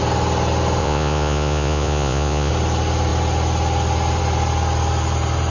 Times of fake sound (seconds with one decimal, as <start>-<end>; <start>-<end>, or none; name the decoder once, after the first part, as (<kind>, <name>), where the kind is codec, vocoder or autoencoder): 0.8-2.5 (vocoder, Vocos)